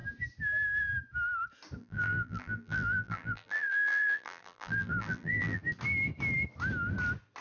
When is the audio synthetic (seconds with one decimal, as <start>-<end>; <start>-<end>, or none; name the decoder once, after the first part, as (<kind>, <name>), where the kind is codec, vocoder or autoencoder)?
1.8-5.6 (vocoder, BigVGAN v2)